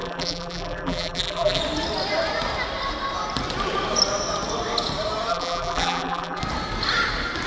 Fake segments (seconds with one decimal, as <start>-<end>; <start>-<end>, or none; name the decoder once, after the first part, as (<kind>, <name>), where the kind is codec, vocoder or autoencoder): 0.0-1.6 (vocoder, BigVGAN v2); 5.3-6.4